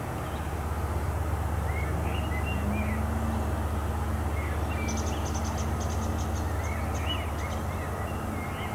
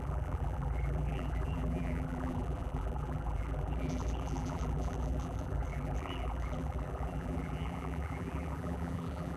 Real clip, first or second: first